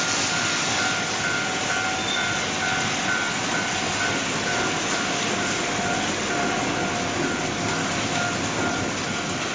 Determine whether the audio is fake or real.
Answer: real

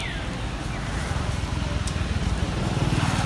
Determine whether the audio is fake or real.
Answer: real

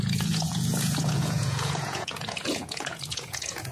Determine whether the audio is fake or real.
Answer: fake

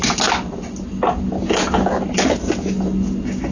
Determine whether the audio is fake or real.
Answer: real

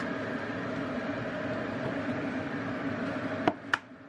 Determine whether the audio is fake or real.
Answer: real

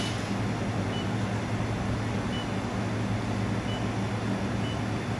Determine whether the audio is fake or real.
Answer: real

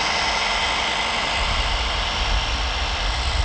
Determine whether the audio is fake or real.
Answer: real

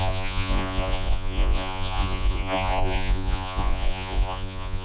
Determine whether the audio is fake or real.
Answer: fake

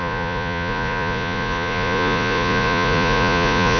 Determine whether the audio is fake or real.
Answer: fake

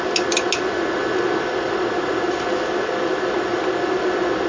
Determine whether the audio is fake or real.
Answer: real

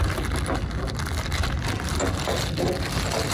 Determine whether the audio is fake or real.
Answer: real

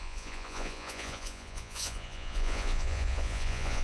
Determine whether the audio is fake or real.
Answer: fake